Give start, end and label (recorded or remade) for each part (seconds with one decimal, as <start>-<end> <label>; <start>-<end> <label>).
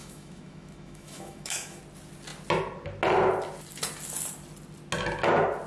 0.0-1.8 remade; 1.8-5.7 recorded